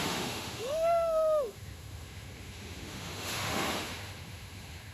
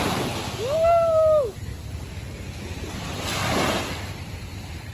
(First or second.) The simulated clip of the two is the first